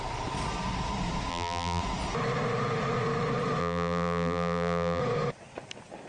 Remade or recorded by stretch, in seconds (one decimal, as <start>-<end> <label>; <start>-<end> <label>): 0.0-1.3 recorded; 1.3-1.8 remade; 1.8-3.6 recorded; 3.6-5.0 remade; 5.0-6.1 recorded